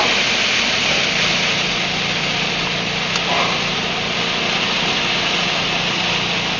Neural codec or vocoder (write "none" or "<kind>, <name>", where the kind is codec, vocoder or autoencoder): none